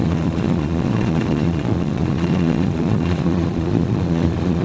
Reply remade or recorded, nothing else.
remade